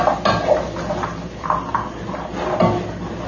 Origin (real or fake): real